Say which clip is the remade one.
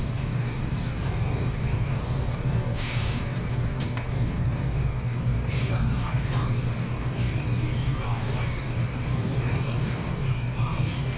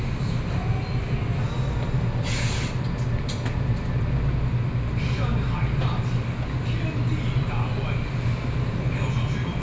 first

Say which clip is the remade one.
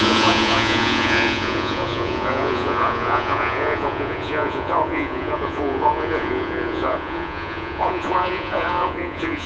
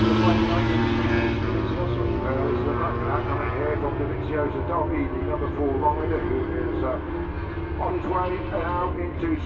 first